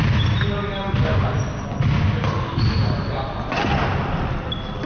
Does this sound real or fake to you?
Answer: real